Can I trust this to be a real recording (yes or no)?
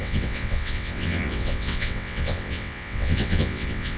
no